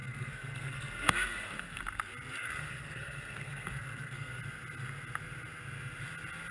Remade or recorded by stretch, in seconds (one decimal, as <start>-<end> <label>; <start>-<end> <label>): 0.0-1.8 remade; 1.8-2.4 recorded; 2.4-4.4 remade; 4.4-6.5 recorded